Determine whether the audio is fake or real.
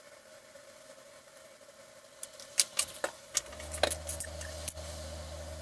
real